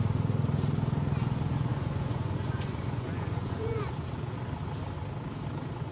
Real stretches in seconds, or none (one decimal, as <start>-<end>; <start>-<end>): 0.0-1.7; 3.9-5.9